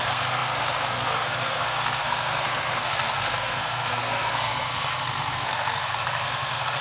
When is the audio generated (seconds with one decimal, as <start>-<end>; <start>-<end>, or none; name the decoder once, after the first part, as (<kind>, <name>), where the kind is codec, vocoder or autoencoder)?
0.0-6.8 (codec, SNAC)